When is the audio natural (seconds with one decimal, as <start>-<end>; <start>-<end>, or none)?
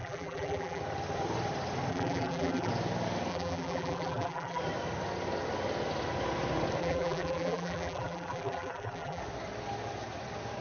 0.8-1.9; 2.7-3.3; 4.6-6.8; 9.2-10.6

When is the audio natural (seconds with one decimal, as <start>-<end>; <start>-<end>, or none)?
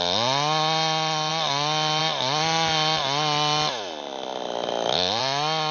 0.0-5.7